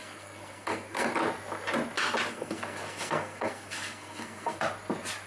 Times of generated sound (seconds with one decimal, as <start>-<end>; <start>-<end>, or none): 0.0-1.1; 2.3-4.6